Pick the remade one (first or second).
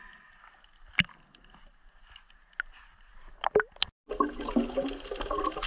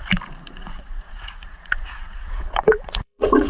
second